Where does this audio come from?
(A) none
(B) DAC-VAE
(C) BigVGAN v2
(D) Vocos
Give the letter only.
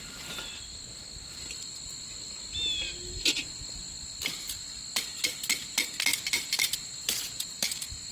A